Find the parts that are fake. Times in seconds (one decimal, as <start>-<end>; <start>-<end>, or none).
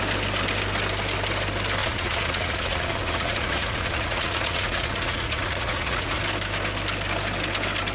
1.8-6.2